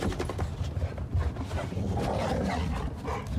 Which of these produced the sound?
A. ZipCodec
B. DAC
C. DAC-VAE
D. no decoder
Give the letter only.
D